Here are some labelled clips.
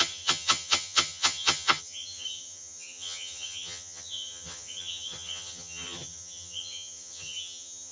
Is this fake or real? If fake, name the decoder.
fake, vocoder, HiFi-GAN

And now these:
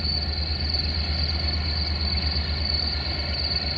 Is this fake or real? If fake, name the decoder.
real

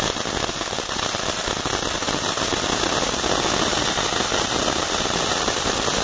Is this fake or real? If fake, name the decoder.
real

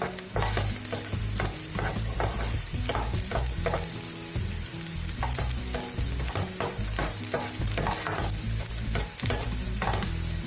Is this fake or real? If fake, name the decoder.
real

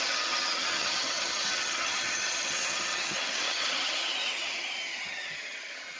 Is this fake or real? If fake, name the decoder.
fake, vocoder, HiFi-GAN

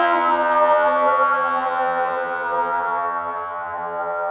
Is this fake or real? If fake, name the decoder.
fake, vocoder, HiFi-GAN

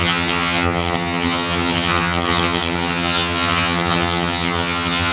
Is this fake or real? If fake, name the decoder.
fake, vocoder, HiFi-GAN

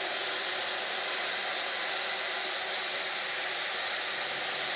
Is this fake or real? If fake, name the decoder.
real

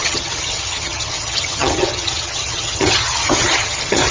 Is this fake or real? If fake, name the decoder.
fake, vocoder, HiFi-GAN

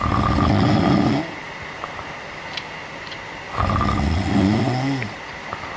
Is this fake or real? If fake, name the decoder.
real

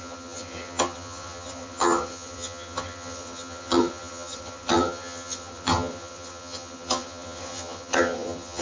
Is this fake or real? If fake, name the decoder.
fake, vocoder, HiFi-GAN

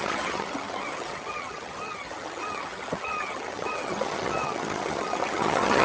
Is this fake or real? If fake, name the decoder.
fake, vocoder, HiFi-GAN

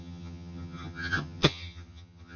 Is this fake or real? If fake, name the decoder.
fake, vocoder, HiFi-GAN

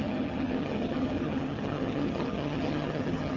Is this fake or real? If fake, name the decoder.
fake, vocoder, HiFi-GAN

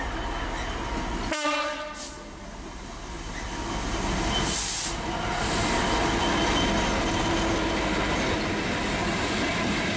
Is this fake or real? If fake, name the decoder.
real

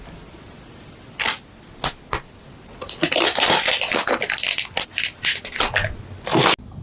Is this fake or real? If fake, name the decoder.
real